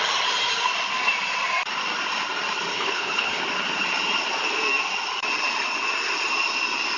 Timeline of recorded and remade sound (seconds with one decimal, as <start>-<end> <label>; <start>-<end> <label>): 0.0-2.7 recorded; 2.7-3.4 remade; 3.4-7.0 recorded

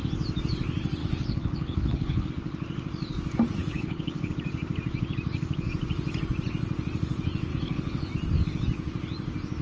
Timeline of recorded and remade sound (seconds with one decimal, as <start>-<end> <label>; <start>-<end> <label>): 0.0-1.0 recorded; 1.0-2.3 remade; 2.3-3.6 recorded; 3.6-4.3 remade; 4.3-7.5 recorded; 7.5-8.1 remade; 8.1-9.6 recorded

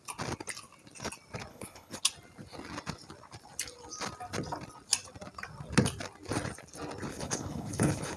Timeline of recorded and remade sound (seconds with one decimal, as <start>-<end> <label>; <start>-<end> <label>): 0.0-1.5 recorded; 1.5-2.0 remade; 2.0-7.1 recorded; 7.1-8.2 remade

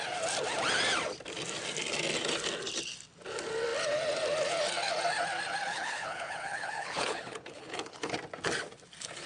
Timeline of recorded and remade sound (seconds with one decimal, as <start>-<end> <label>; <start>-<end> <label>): 0.0-5.7 recorded; 5.7-8.1 remade; 8.1-9.3 recorded

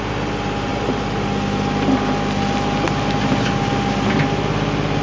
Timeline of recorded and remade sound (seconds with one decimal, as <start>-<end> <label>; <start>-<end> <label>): 0.0-5.0 recorded

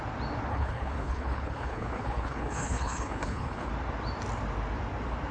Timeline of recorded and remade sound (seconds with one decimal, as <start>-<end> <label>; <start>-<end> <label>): 0.0-0.5 recorded; 0.5-3.7 remade; 3.7-5.3 recorded